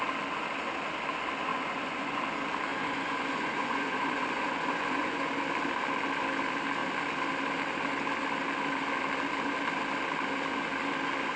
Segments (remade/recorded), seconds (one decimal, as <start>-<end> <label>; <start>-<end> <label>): 0.0-1.5 recorded; 1.5-2.2 remade; 2.2-2.7 recorded; 2.7-5.3 remade; 5.3-11.4 recorded